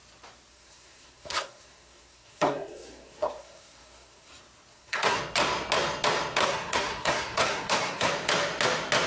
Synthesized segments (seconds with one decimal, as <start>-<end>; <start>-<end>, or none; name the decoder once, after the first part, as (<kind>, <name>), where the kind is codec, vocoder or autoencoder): 0.5-4.3 (codec, SNAC); 4.7-5.2; 6.4-8.1